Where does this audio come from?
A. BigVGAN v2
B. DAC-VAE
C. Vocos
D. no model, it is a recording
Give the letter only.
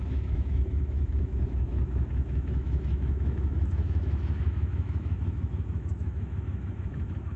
B